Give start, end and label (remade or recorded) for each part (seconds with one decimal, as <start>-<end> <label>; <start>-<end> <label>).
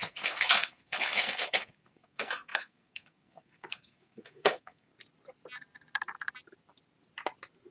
0.0-4.9 remade; 4.9-7.7 recorded